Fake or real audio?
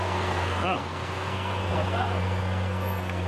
fake